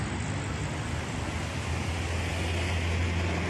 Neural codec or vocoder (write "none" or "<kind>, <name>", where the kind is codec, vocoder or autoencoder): none